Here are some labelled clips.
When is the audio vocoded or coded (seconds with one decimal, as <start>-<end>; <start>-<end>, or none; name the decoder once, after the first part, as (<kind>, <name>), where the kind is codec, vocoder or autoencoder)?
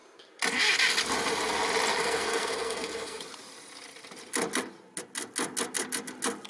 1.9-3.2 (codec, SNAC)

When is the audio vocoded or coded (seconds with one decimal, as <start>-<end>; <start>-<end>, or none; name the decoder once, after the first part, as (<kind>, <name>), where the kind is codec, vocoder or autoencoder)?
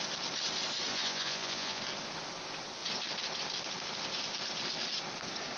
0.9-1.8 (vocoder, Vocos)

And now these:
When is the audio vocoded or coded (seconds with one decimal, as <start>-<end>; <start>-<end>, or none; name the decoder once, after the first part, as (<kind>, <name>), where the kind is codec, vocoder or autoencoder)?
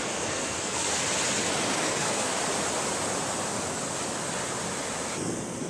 0.0-1.0 (codec, SNAC); 1.8-2.3; 5.2-5.7